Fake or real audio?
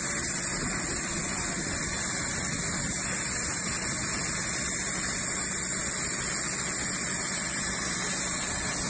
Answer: real